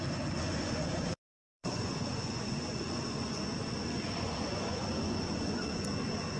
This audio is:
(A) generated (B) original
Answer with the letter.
A